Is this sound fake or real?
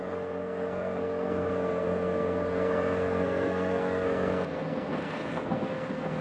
fake